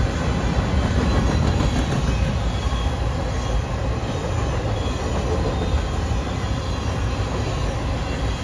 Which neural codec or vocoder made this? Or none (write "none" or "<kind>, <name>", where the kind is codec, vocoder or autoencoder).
none